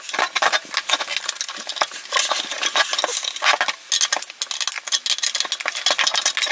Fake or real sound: real